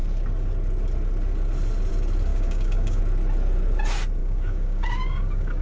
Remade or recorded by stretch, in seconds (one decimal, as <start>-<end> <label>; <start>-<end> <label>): 0.0-2.3 recorded; 2.3-3.0 remade; 3.0-4.2 recorded; 4.2-5.6 remade